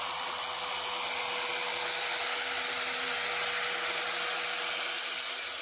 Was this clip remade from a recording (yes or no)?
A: no